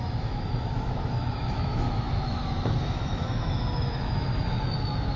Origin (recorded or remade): remade